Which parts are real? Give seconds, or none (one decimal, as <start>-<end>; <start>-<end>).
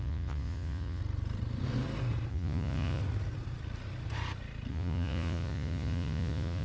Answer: 1.0-2.3; 3.0-4.7